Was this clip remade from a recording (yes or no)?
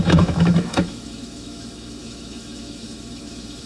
yes